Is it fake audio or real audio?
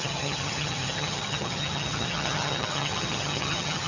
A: fake